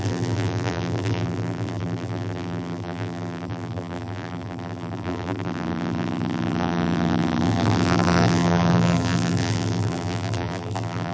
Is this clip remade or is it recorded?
remade